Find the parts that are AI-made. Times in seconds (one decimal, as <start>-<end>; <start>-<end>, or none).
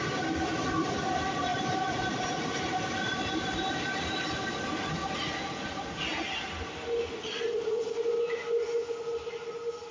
1.5-4.5